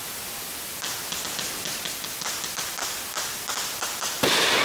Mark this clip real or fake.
real